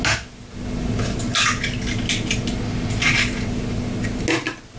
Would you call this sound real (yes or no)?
yes